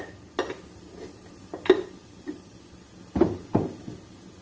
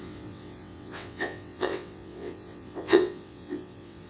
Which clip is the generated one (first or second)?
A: second